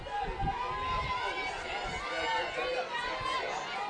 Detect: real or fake real